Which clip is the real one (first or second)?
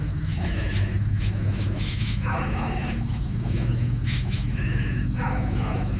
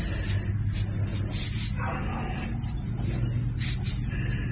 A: second